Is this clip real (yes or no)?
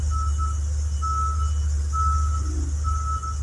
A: yes